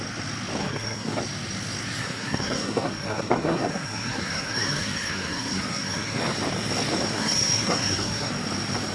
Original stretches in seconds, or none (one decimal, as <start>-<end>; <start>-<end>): 0.0-0.6; 1.2-2.0; 6.2-7.1; 8.3-8.9